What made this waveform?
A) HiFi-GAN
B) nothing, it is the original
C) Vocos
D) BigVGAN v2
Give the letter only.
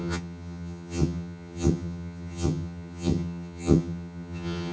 A